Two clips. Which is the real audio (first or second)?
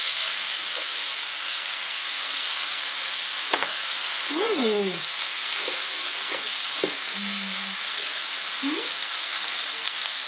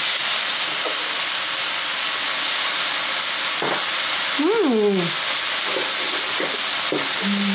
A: second